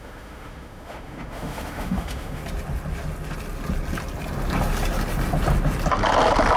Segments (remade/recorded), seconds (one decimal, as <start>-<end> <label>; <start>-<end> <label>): 0.0-2.4 remade; 2.4-6.6 recorded